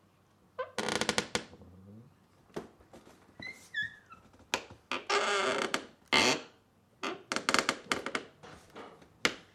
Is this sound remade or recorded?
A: recorded